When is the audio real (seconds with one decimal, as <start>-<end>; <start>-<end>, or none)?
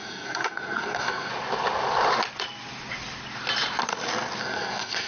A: 1.3-4.4